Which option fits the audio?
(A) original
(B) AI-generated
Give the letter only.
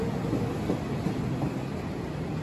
A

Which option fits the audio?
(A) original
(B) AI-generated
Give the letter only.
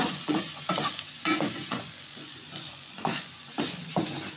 B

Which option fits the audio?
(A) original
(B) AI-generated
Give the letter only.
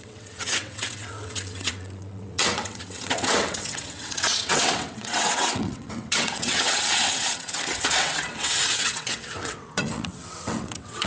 B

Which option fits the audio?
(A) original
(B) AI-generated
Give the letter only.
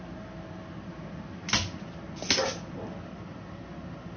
A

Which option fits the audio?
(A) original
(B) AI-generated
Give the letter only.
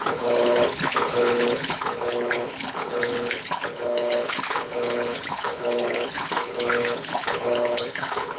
B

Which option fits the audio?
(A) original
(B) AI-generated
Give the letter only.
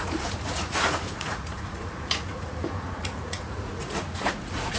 B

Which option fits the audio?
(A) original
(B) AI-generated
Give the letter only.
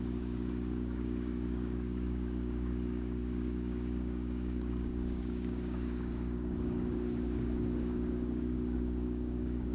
B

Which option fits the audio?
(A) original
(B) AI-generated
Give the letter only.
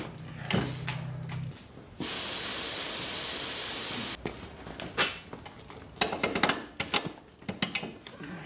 A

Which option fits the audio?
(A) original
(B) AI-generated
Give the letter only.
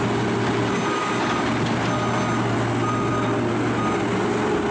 A